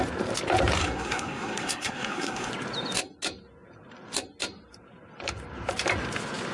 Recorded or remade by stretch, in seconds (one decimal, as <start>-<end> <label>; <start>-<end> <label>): 0.0-0.8 recorded; 0.8-2.5 remade; 2.5-6.5 recorded